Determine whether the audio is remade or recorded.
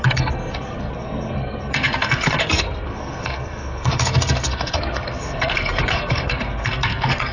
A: remade